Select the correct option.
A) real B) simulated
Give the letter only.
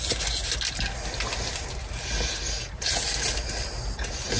A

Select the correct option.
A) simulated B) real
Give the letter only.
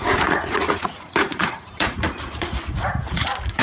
A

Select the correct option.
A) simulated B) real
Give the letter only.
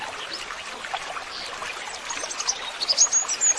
B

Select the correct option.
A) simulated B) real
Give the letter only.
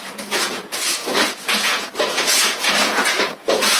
A